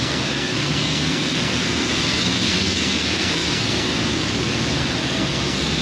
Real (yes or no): no